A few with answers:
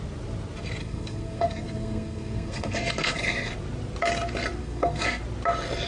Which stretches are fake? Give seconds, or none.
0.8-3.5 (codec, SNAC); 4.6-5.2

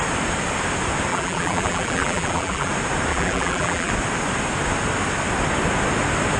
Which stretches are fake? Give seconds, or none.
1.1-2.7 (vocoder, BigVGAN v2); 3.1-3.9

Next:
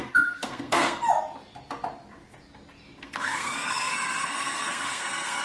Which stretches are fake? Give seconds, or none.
0.0-1.0 (codec, SNAC); 3.0-5.4

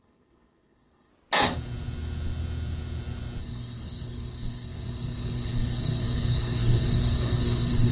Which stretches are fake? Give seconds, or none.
0.0-1.1 (codec, SNAC); 3.4-7.9

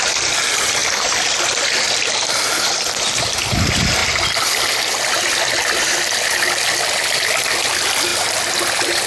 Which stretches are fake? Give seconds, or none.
none